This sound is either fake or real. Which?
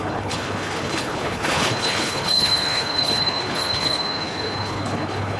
fake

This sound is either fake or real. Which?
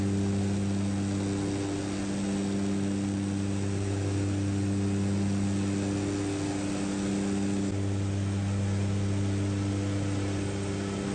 real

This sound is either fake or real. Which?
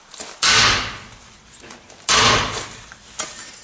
real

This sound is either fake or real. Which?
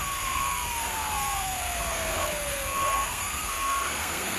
fake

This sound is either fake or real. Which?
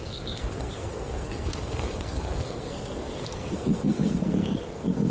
fake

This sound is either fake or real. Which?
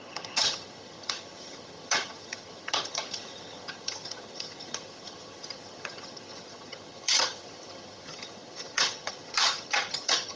fake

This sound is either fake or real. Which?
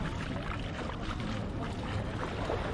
real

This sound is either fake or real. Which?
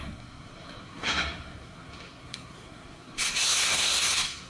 fake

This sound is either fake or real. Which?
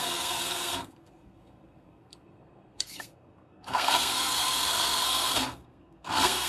fake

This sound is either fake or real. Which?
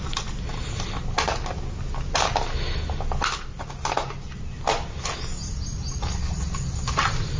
real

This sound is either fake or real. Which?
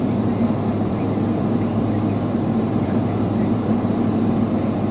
fake